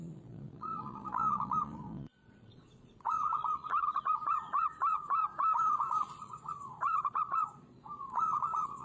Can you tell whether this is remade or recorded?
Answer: remade